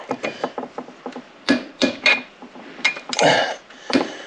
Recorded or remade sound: remade